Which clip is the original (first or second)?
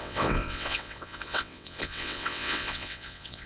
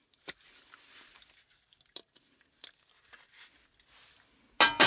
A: second